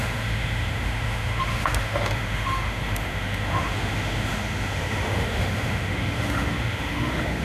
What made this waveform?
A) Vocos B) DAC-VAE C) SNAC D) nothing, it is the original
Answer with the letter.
B